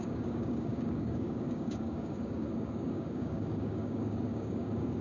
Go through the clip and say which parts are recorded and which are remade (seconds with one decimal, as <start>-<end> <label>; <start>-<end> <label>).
0.0-5.0 remade

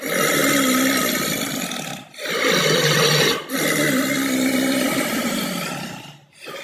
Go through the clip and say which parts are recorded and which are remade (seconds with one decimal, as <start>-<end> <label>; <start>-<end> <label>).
0.0-2.6 recorded; 2.6-3.4 remade; 3.4-6.6 recorded

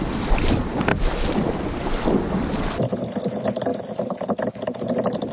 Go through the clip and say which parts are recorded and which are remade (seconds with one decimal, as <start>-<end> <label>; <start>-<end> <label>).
0.0-5.3 recorded

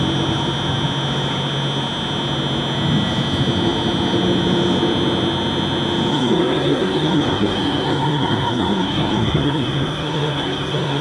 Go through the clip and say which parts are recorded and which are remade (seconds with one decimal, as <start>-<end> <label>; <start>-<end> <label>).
0.0-6.1 recorded; 6.1-11.0 remade